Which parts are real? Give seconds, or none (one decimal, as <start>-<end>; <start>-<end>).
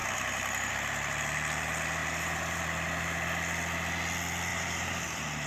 0.7-2.0; 2.6-4.5